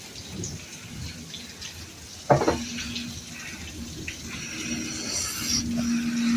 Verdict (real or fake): real